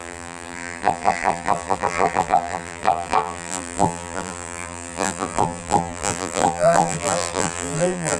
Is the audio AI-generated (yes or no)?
yes